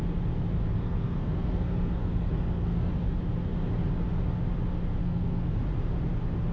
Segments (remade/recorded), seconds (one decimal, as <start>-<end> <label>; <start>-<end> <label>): 0.0-0.8 recorded; 0.8-2.9 remade; 2.9-5.0 recorded; 5.0-5.5 remade; 5.5-6.5 recorded